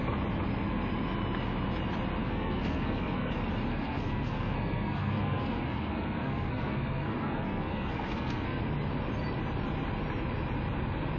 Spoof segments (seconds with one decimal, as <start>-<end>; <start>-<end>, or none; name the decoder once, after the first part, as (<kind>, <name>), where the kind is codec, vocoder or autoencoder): 2.2-3.3 (codec, SNAC); 3.7-8.6